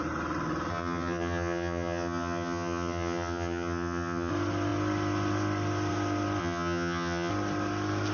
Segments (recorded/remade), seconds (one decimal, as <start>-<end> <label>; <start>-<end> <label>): 0.0-0.7 recorded; 0.7-4.3 remade; 4.3-6.4 recorded; 6.4-7.3 remade; 7.3-8.1 recorded